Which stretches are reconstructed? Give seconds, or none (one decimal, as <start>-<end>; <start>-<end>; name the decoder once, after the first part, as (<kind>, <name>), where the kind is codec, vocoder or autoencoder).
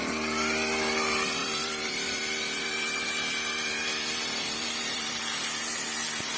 1.4-5.2 (vocoder, BigVGAN v2)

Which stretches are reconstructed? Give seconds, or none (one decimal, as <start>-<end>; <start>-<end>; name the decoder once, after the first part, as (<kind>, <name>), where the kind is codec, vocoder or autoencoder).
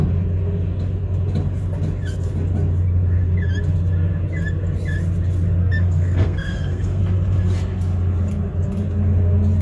5.6-7.0 (codec, SNAC)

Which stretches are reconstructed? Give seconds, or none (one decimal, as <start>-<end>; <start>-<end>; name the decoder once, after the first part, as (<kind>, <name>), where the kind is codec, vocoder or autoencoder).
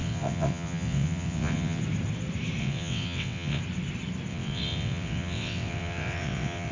0.0-1.8 (vocoder, WaveNeXt); 2.6-3.6; 4.3-6.7